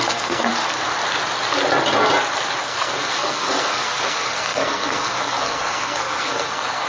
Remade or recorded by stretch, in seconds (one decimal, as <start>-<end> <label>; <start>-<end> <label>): 0.0-0.5 remade; 0.5-2.6 recorded; 2.6-6.9 remade